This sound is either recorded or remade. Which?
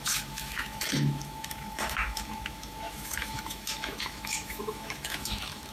remade